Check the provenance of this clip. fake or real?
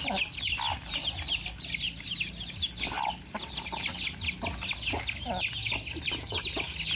real